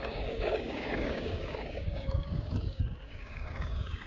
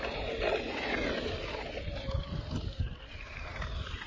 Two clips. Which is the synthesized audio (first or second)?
first